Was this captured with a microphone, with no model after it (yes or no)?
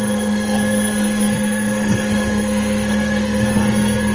no